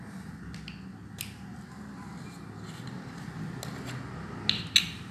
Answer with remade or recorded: recorded